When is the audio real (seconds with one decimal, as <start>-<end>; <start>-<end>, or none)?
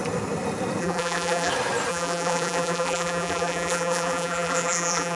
0.0-0.8; 1.5-1.9